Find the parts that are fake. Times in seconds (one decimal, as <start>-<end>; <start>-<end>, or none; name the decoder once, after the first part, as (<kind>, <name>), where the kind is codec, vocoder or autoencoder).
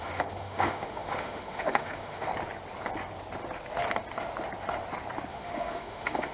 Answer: 0.0-2.3 (autoencoder, DAC-VAE); 5.3-6.3